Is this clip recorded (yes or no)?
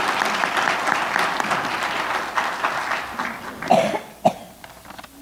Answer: yes